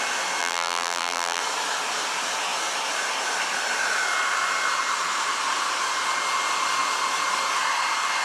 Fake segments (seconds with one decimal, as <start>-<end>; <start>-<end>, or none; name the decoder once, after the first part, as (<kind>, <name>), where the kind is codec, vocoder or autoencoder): 0.4-1.4 (vocoder, BigVGAN v2)

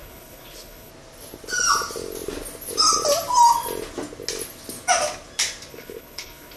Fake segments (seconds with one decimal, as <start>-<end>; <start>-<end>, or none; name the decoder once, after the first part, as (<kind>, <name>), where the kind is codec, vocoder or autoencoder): 0.0-0.9 (codec, HILCodec); 5.7-6.6

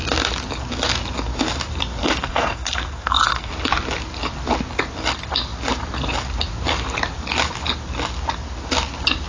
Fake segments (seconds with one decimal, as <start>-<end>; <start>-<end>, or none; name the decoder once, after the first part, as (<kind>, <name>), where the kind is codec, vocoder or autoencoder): 2.0-3.5 (codec, SNAC)

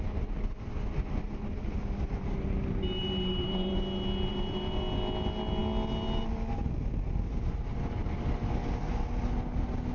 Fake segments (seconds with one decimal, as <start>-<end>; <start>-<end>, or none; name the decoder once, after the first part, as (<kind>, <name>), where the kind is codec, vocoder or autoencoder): 3.0-3.8 (vocoder, BigVGAN v2); 4.3-4.8

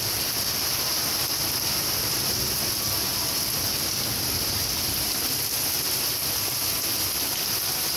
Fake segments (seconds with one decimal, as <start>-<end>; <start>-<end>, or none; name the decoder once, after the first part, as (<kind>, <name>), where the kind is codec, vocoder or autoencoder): none

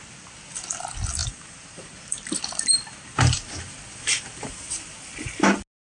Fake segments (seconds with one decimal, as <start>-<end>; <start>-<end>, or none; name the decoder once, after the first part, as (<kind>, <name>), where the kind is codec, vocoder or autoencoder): 1.2-4.7 (vocoder, BigVGAN v2)

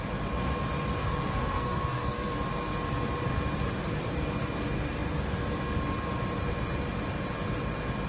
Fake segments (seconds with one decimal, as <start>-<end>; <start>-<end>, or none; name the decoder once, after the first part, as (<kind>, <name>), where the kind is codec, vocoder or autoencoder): 1.0-2.3 (codec, SNAC)

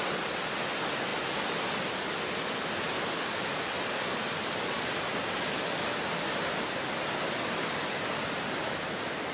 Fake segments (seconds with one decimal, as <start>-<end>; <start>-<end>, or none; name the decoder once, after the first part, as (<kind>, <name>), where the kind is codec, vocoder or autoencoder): none